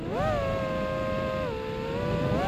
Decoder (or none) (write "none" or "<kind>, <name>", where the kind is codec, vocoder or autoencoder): none